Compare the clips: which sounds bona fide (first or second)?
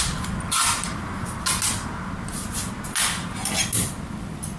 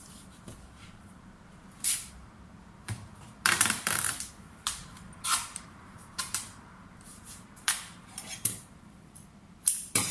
first